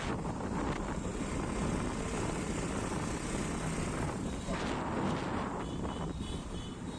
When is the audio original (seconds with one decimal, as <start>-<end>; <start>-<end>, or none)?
0.0-7.0